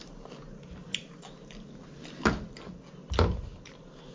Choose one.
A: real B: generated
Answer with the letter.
A